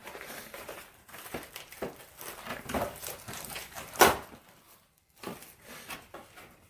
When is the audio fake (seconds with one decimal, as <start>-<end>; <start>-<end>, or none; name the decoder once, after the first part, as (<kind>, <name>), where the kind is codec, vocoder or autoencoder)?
0.0-1.5 (vocoder, BigVGAN v2); 2.5-4.0